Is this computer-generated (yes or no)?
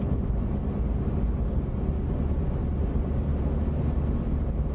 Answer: no